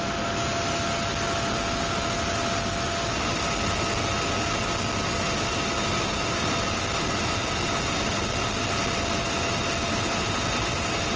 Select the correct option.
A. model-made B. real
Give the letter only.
B